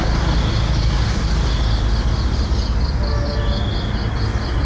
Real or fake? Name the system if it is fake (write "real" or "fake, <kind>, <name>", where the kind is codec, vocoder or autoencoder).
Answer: real